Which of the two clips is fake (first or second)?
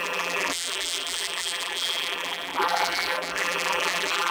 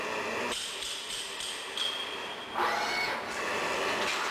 first